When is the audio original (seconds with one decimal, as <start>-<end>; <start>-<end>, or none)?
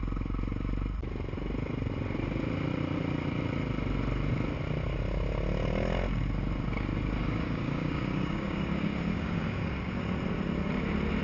0.0-7.2; 10.0-11.2